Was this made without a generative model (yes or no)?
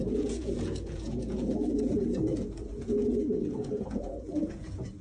no